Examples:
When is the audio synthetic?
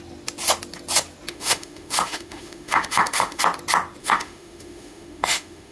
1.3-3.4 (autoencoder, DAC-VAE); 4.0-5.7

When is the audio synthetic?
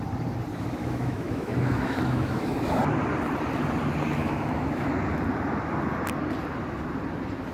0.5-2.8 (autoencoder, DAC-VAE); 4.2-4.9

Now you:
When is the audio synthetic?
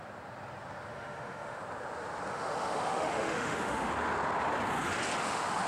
0.9-1.6 (autoencoder, DAC-VAE); 2.3-3.9; 5.2-5.7